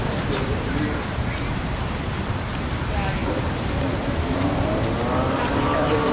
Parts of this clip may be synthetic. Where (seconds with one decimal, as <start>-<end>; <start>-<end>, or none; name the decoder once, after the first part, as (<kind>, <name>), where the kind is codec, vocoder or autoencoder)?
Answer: 0.4-2.4 (vocoder, BigVGAN v2); 3.2-4.6